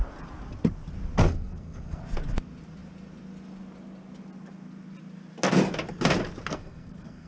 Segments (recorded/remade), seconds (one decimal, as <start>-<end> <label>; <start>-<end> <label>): 0.0-1.2 recorded; 1.2-2.0 remade; 2.0-6.5 recorded; 6.5-7.3 remade